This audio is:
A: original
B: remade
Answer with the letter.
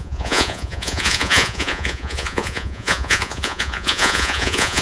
B